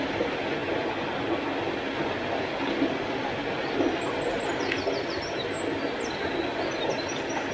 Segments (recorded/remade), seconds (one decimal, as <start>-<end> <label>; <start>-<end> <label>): 0.0-7.5 recorded